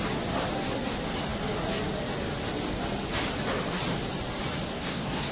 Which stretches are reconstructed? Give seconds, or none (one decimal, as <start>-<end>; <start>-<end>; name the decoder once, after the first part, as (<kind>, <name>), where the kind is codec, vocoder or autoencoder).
4.7-5.3 (codec, SNAC)